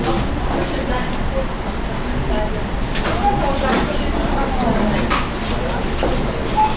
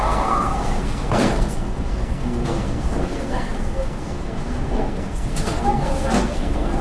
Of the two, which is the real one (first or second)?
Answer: first